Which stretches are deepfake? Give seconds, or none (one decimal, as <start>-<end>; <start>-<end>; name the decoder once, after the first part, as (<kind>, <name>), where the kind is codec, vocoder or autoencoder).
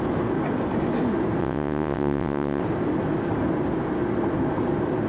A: 1.4-2.6 (vocoder, WaveNeXt)